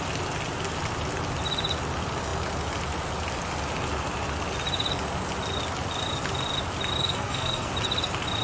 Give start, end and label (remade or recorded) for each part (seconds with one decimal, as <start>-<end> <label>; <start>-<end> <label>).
0.0-7.0 recorded; 7.0-7.7 remade; 7.7-8.4 recorded